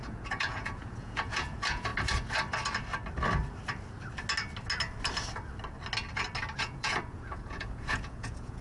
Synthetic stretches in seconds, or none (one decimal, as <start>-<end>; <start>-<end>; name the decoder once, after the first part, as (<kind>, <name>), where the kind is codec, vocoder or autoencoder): 0.0-1.9 (vocoder, Vocos); 6.6-8.6